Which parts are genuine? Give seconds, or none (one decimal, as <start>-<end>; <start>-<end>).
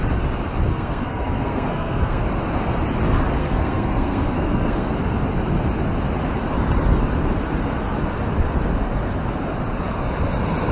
0.0-0.7; 2.2-3.4; 4.9-10.7